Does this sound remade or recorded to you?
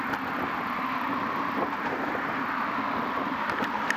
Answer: remade